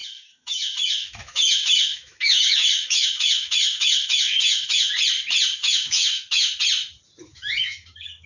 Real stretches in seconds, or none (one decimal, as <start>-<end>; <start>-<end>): 4.9-5.6; 6.5-7.2